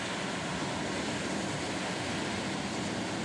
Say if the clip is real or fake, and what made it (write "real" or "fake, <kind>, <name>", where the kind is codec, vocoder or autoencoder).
real